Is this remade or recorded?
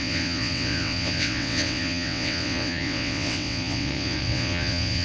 remade